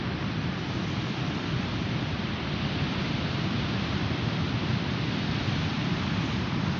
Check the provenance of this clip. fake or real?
fake